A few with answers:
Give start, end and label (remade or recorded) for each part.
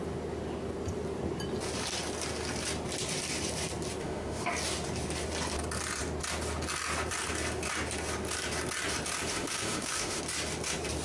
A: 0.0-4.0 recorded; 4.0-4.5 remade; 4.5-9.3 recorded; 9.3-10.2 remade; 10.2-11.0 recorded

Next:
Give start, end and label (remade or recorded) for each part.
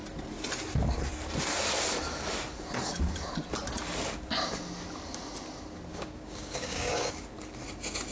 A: 0.0-5.9 recorded; 5.9-7.1 remade; 7.1-8.1 recorded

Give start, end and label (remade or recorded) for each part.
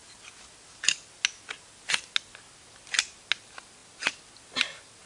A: 0.0-5.1 recorded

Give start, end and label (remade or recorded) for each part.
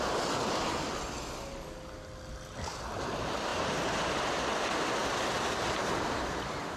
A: 0.0-6.8 recorded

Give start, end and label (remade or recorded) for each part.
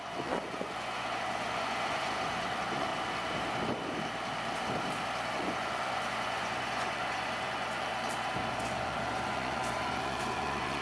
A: 0.0-2.9 remade; 2.9-5.3 recorded; 5.3-7.9 remade; 7.9-8.6 recorded; 8.6-10.8 remade